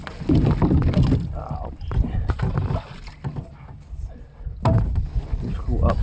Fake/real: real